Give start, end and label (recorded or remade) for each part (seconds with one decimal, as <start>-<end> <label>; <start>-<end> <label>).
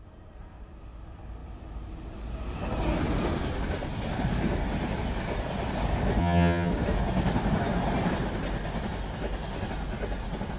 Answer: 0.0-6.2 recorded; 6.2-6.7 remade; 6.7-10.6 recorded